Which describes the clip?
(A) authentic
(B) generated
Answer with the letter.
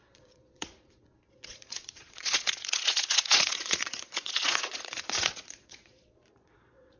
B